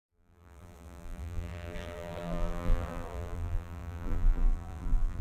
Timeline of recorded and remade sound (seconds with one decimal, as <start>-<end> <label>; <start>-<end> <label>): 0.0-5.2 remade